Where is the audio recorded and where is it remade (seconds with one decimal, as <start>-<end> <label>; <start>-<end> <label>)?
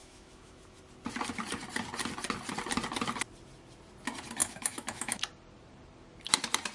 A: 0.0-0.8 remade; 0.8-4.4 recorded; 4.4-5.2 remade; 5.2-6.7 recorded